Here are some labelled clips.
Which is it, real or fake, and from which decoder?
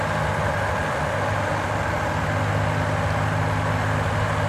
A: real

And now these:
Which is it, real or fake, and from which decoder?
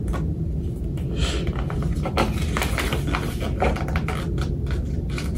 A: real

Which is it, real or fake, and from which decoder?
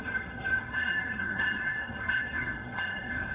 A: fake, codec, SNAC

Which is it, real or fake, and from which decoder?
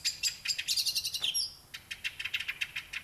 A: real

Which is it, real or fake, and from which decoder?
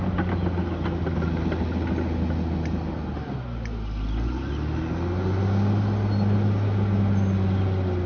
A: real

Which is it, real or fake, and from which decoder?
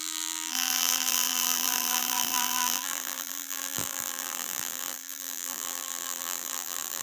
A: fake, vocoder, BigVGAN v2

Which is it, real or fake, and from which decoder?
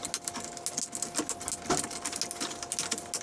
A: real